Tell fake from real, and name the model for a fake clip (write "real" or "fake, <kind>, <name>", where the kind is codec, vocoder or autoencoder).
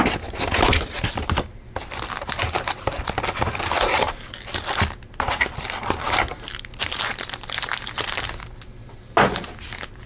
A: real